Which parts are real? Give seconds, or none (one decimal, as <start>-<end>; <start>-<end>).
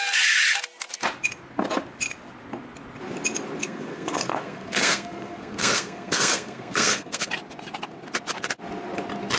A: 0.0-3.6; 7.3-9.4